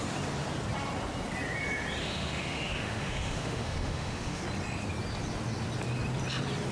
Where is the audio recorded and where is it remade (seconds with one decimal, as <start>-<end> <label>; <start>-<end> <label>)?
0.0-2.0 recorded; 2.0-4.4 remade; 4.4-6.7 recorded